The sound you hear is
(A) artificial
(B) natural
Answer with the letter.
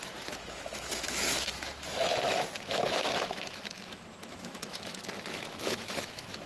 A